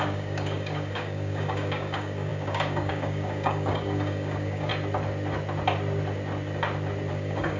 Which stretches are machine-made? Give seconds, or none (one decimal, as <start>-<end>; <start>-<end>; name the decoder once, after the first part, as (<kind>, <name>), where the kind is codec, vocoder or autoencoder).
0.0-4.7 (codec, DAC); 7.1-7.6